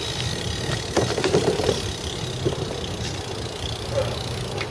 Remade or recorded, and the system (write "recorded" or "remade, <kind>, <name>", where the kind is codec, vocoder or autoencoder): recorded